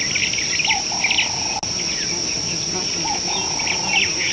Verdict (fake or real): real